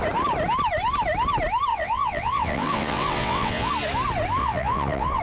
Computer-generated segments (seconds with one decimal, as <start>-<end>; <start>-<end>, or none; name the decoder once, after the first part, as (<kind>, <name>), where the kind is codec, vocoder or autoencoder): 1.7-3.7 (vocoder, WaveNeXt); 4.4-5.2